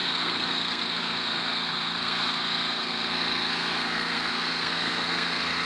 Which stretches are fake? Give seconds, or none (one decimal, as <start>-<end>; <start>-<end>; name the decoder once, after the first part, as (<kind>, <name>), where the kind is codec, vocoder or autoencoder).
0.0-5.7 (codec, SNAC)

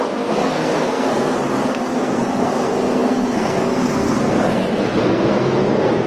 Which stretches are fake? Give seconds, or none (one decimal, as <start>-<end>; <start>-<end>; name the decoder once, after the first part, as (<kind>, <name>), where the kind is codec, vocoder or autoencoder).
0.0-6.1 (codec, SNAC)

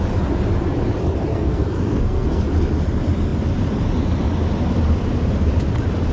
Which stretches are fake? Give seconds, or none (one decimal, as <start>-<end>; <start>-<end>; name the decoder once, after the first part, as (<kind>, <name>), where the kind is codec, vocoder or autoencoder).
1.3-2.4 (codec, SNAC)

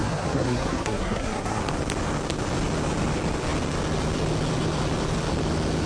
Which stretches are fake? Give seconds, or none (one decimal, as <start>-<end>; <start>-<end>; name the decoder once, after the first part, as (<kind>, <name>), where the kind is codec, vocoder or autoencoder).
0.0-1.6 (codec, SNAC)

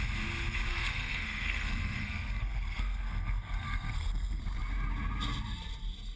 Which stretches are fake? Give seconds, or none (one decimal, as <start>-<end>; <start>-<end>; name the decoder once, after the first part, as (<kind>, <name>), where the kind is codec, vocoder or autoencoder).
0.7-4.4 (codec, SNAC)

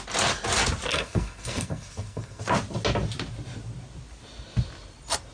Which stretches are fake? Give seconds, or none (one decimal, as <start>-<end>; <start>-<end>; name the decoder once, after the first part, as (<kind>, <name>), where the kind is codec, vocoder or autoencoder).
0.9-2.4 (codec, SNAC)